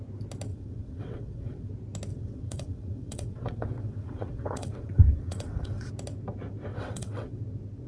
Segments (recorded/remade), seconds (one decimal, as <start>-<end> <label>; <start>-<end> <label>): 0.0-0.5 recorded; 0.5-1.7 remade; 1.7-2.1 recorded; 2.1-5.9 remade; 5.9-6.7 recorded; 6.7-7.4 remade; 7.4-7.9 recorded